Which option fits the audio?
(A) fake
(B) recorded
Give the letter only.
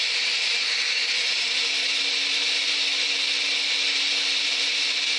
B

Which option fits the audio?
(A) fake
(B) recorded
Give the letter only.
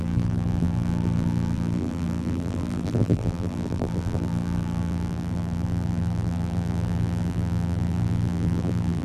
A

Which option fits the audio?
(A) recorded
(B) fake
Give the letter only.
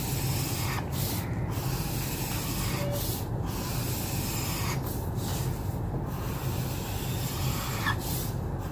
A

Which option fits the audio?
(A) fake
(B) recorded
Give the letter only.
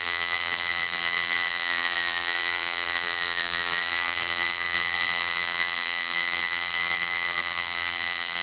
A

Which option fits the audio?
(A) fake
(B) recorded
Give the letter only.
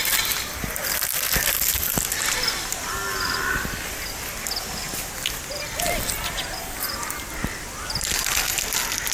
B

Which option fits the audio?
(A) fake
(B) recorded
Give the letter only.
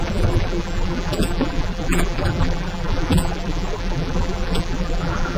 A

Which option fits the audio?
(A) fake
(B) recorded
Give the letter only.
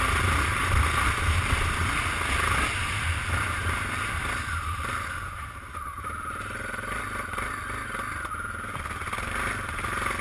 B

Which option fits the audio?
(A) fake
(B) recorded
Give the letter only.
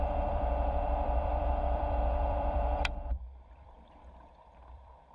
A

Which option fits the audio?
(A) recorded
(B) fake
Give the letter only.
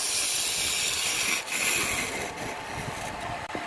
A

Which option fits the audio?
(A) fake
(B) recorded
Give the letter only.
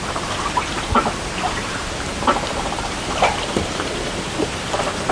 A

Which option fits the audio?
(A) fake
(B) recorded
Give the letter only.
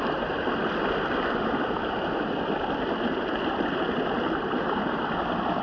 B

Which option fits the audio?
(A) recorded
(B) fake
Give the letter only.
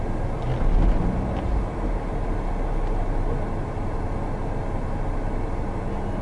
A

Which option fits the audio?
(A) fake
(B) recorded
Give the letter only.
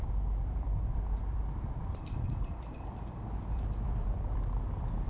A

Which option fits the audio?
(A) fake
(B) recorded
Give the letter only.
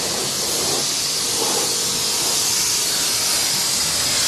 B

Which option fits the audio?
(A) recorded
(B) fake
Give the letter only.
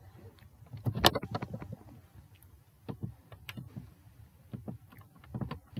A